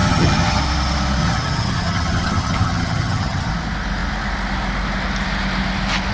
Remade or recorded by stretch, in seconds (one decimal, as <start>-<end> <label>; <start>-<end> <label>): 0.0-0.6 remade; 0.6-1.2 recorded; 1.2-3.5 remade; 3.5-6.1 recorded